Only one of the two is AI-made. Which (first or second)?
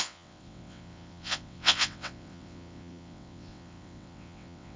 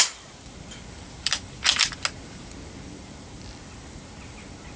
first